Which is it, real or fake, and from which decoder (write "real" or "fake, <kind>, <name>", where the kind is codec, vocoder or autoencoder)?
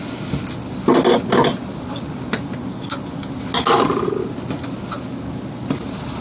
real